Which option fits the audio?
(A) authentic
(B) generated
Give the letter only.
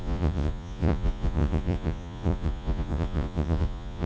B